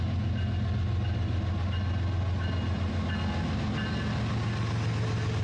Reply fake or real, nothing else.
real